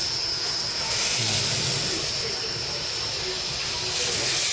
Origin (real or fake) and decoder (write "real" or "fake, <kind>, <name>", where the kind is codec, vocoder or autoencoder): real